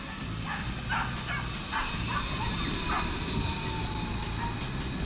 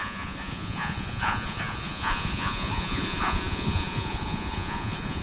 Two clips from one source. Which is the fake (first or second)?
second